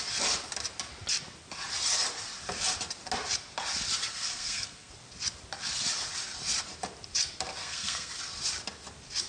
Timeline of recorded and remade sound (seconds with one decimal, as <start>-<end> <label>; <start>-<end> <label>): 0.0-4.1 recorded; 4.1-4.9 remade; 4.9-7.6 recorded; 7.6-8.1 remade; 8.1-9.3 recorded